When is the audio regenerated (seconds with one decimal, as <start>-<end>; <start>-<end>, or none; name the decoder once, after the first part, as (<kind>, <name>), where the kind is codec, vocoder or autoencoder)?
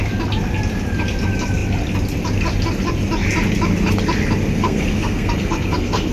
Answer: 4.5-6.1 (codec, SNAC)